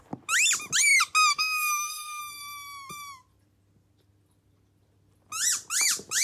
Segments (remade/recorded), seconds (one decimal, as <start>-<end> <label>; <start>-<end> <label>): 0.0-1.3 recorded; 1.3-2.2 remade; 2.2-6.2 recorded